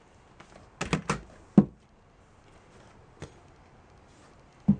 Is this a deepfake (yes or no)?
no